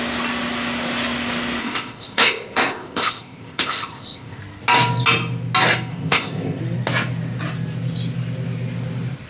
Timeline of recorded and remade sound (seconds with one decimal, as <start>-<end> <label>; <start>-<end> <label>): 0.0-1.6 recorded; 1.6-4.4 remade; 4.4-5.9 recorded; 5.9-6.6 remade; 6.6-9.3 recorded